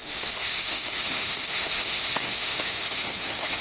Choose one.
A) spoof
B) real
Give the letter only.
A